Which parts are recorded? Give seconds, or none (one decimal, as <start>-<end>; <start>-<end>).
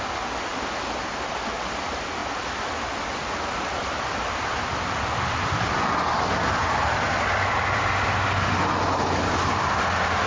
0.0-10.3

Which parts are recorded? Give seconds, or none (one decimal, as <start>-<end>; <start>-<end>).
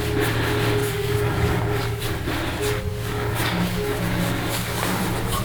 0.0-0.8; 2.0-2.9; 5.0-5.4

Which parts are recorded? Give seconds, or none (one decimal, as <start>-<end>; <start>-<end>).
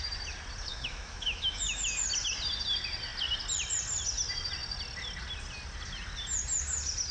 0.0-0.7; 1.8-7.1